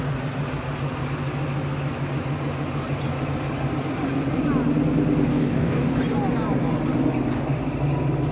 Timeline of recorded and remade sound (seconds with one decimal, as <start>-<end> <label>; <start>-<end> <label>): 0.0-5.3 recorded; 5.3-6.0 remade; 6.0-8.3 recorded